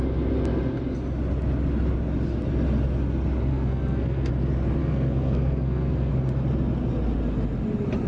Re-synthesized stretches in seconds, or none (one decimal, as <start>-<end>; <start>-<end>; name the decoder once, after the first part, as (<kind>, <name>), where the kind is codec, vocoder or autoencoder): 3.5-4.3 (codec, SNAC); 4.8-6.1